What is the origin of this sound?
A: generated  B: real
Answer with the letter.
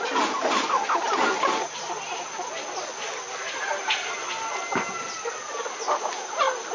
B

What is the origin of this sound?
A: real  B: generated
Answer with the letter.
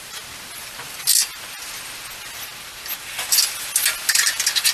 A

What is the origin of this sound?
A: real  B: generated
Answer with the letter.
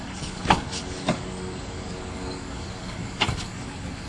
B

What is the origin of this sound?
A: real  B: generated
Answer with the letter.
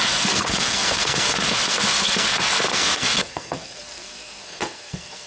B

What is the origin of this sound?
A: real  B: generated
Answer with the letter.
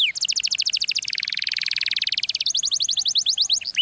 A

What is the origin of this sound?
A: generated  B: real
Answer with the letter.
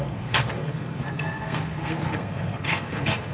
A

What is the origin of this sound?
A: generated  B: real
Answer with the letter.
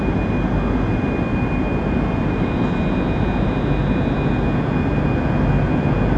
B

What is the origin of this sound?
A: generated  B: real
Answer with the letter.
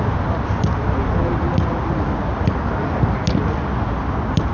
B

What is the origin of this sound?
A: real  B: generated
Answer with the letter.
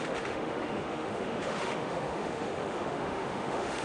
B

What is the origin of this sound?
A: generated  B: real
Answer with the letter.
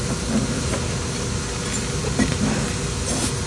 B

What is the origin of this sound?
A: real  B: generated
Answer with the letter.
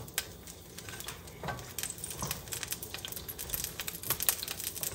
A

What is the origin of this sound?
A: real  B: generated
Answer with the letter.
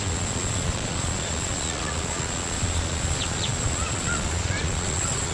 B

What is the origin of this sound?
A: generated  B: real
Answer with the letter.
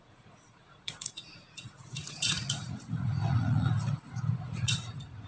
A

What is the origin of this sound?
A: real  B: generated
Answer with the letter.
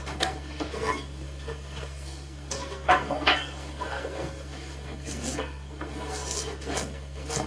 B